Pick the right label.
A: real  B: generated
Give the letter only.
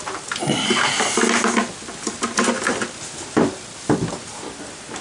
A